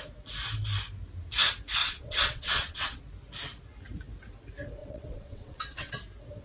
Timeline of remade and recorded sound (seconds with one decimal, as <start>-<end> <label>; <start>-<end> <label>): 0.0-1.8 recorded; 1.8-3.0 remade; 3.0-4.8 recorded; 4.8-5.9 remade; 5.9-6.4 recorded